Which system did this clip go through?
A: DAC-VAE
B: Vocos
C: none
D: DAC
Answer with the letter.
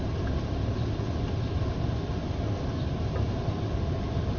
C